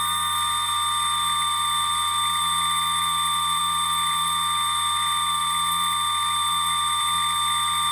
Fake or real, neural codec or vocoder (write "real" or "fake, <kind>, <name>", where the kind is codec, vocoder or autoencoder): fake, vocoder, BigVGAN v2